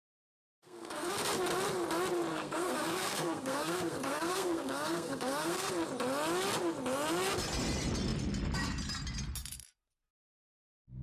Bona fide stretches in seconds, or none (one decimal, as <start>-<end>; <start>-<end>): 0.0-0.4; 1.1-2.3; 5.7-11.0